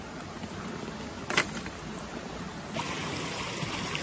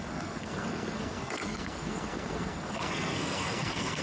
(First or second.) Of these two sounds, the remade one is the second